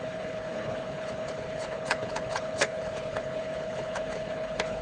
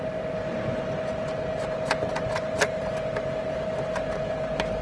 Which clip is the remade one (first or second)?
first